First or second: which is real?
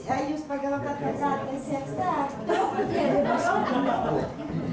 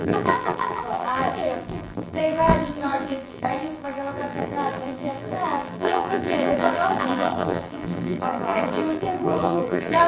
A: first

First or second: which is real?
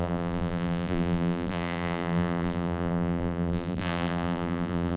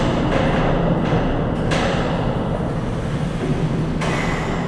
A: second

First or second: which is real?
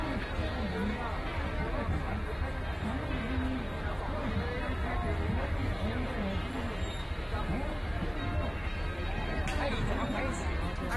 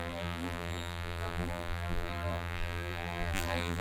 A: first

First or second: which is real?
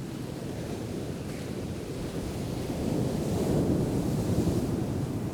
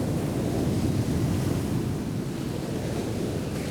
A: second